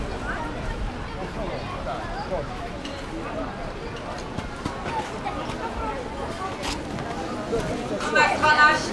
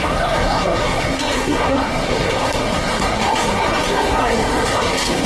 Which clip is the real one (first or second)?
first